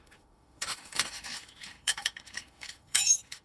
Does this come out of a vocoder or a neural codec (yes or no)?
yes